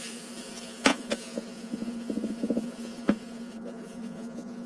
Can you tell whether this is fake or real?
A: fake